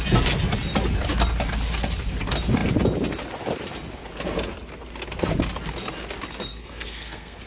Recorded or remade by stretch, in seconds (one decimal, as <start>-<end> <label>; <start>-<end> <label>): 0.0-6.5 recorded; 6.5-7.5 remade